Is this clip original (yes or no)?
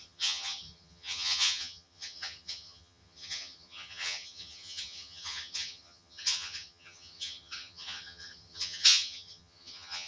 no